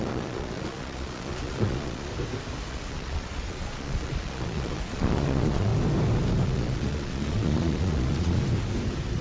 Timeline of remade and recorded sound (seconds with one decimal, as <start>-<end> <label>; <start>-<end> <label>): 0.0-2.1 remade; 2.1-2.7 recorded; 2.7-5.7 remade; 5.7-6.4 recorded; 6.4-8.4 remade; 8.4-9.2 recorded